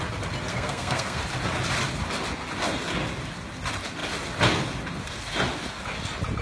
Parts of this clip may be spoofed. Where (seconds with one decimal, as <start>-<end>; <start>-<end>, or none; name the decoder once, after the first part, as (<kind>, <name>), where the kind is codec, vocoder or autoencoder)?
0.5-1.2 (codec, SNAC)